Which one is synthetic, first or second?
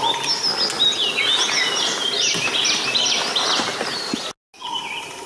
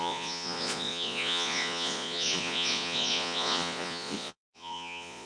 second